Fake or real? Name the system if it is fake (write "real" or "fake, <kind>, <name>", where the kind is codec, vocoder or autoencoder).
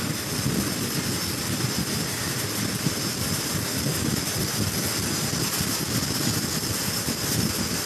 real